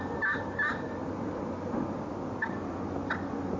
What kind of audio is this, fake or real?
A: real